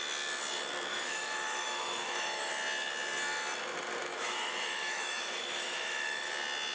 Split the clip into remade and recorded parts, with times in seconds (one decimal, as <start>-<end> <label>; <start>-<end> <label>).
0.0-0.9 recorded; 0.9-2.5 remade; 2.5-4.1 recorded; 4.1-6.3 remade; 6.3-6.7 recorded